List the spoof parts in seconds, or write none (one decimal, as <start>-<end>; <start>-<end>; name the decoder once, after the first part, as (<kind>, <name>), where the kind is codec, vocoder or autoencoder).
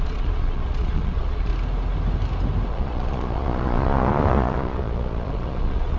0.0-1.5 (vocoder, Vocos); 2.7-6.0